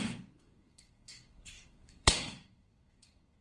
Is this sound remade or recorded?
remade